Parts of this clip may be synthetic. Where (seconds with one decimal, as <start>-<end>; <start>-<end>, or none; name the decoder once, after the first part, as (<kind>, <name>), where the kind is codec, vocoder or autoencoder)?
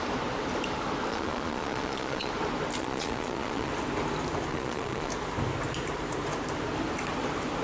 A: 1.1-2.3 (vocoder, Vocos); 2.8-3.7; 4.5-5.1